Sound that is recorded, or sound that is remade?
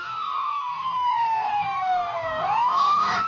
remade